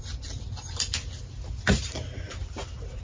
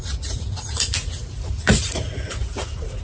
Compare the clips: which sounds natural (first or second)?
first